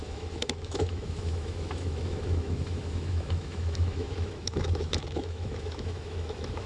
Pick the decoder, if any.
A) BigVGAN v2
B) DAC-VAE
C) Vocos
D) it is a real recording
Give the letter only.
B